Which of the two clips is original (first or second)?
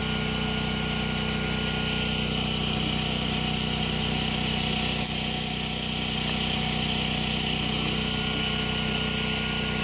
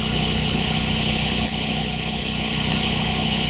first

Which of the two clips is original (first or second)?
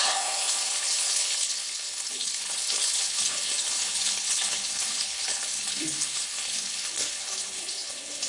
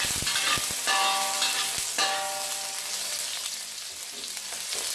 second